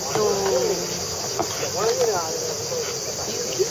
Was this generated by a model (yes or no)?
no